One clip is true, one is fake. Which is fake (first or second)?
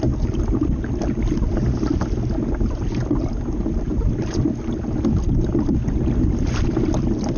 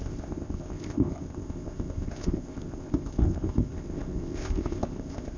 second